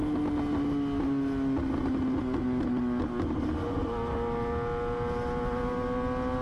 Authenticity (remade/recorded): recorded